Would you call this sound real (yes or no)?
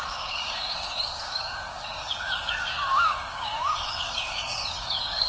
no